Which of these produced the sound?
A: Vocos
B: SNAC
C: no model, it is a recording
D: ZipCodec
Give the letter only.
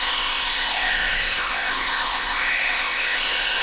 D